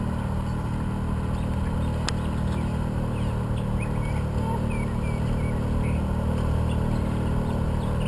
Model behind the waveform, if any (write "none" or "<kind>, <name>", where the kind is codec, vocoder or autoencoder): none